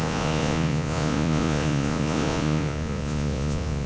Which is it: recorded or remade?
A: remade